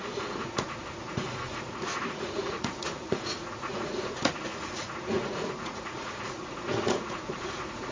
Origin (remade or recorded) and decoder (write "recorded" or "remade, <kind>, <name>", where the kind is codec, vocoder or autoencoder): remade, vocoder, Vocos